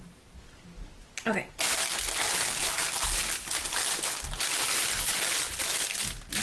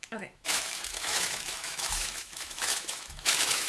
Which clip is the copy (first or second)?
second